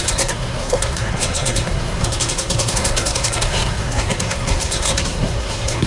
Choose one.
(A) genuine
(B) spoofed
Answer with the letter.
B